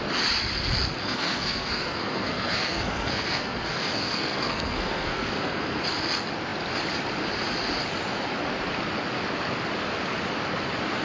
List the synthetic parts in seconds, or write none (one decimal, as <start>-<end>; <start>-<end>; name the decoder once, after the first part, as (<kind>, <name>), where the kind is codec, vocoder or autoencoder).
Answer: 1.0-5.8 (codec, SNAC)